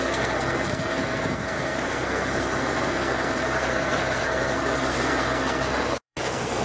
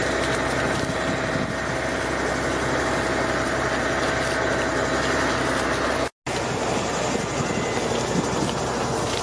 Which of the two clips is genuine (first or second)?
second